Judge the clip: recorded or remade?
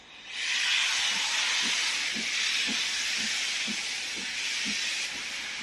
recorded